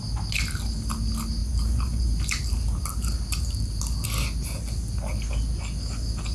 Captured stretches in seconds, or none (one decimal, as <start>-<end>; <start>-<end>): 0.0-1.4; 3.8-6.3